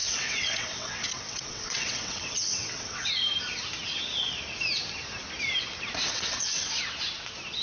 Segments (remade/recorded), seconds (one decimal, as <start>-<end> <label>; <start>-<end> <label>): 0.0-3.1 remade; 3.1-6.0 recorded; 6.0-6.8 remade; 6.8-7.6 recorded